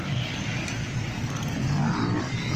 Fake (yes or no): no